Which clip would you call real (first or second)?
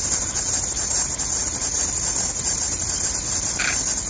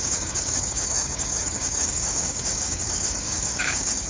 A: first